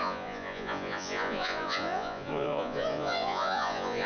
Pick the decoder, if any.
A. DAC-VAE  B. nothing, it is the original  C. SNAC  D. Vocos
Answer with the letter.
D